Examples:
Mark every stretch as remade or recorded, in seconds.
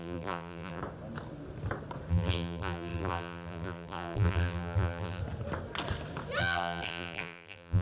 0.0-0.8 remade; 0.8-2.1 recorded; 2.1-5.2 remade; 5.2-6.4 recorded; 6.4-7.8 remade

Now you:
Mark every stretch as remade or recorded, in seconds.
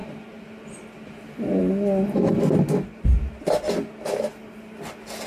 0.0-5.3 recorded